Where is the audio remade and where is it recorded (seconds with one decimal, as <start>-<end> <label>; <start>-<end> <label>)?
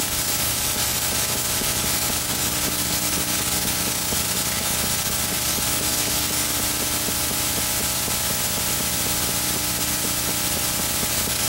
0.0-6.5 remade; 6.5-11.1 recorded; 11.1-11.5 remade